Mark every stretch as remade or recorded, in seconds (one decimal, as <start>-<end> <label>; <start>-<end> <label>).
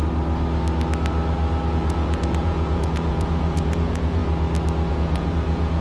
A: 0.0-1.7 recorded; 1.7-4.2 remade; 4.2-4.9 recorded; 4.9-5.8 remade